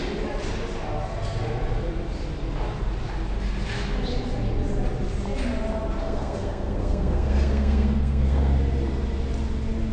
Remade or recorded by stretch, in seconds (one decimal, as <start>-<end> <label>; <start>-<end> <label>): 0.0-6.0 recorded; 6.0-8.5 remade; 8.5-9.9 recorded